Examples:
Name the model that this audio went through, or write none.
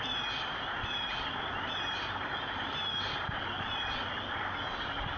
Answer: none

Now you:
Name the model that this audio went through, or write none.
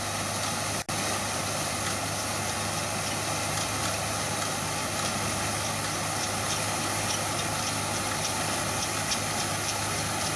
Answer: none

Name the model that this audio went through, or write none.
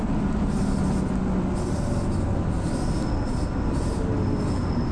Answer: none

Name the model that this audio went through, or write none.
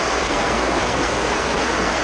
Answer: codec, SNAC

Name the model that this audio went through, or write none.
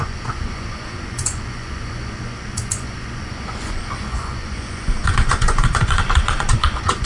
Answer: vocoder, Vocos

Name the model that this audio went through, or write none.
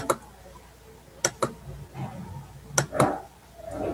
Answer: none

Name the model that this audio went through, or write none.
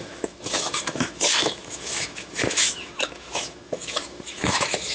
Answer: autoencoder, DAC-VAE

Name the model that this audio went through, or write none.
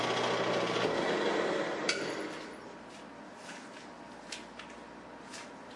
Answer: none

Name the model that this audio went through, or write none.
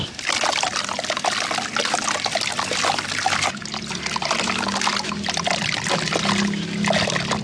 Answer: none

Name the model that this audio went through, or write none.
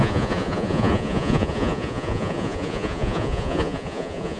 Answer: vocoder, Vocos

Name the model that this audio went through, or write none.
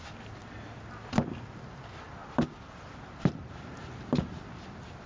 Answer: none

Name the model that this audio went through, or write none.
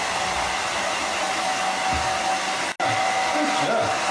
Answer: none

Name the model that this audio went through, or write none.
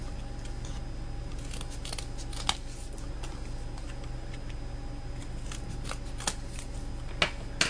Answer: none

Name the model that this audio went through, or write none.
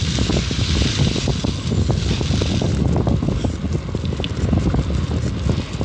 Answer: none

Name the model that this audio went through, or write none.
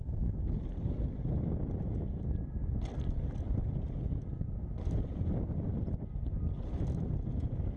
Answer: none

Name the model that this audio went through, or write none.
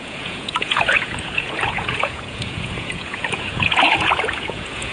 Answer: vocoder, Vocos